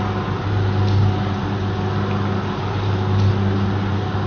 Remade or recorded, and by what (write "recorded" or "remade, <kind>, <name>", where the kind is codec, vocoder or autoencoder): recorded